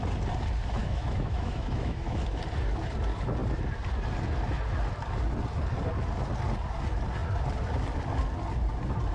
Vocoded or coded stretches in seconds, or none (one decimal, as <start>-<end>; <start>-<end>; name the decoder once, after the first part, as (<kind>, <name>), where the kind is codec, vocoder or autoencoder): 0.8-2.4 (autoencoder, DAC-VAE)

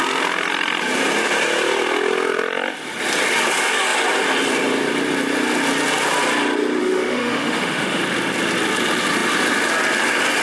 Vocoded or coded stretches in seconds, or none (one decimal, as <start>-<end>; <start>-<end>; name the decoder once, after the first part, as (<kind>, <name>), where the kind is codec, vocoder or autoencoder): 6.8-8.0 (autoencoder, DAC-VAE)

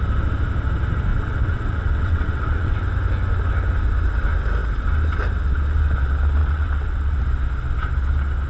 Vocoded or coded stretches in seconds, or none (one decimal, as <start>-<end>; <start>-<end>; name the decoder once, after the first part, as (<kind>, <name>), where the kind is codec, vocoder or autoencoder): 1.1-2.8 (vocoder, WaveNeXt); 6.4-7.2